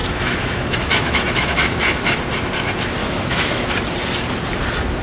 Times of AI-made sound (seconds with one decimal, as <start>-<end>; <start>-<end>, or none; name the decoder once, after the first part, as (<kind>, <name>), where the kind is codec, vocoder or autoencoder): 0.0-2.2 (autoencoder, DAC-VAE); 3.0-3.7